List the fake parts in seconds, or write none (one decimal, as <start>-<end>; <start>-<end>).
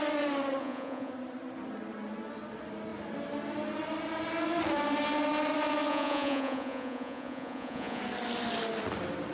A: 0.6-1.1; 5.9-8.0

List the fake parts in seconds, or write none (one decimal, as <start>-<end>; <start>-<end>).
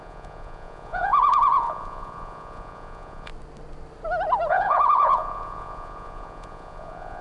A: 0.0-3.3; 4.5-7.2